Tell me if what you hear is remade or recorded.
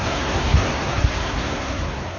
remade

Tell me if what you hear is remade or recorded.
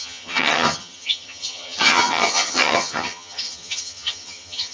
remade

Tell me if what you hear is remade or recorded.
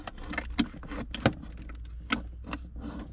recorded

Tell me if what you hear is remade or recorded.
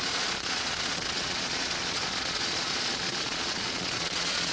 remade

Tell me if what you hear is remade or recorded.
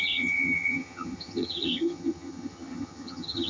remade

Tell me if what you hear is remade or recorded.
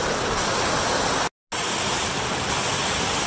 recorded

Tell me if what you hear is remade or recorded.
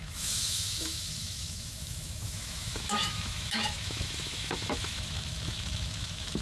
remade